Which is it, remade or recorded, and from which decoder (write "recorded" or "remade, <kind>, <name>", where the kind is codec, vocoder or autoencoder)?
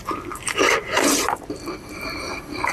remade, vocoder, BigVGAN v2